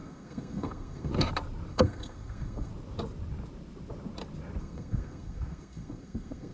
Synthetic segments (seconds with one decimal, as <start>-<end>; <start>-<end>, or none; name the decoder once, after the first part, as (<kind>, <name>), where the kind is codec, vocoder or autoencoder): 0.0-1.1 (codec, SNAC); 1.7-2.7; 4.6-6.5